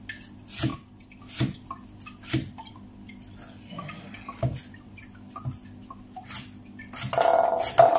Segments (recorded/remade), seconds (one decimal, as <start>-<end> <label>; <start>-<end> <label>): 0.0-8.0 recorded